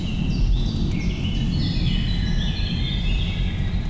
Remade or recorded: recorded